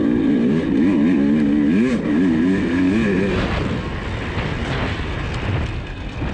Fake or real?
real